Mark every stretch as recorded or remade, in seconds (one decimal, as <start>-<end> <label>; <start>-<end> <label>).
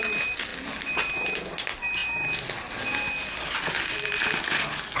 0.0-5.0 recorded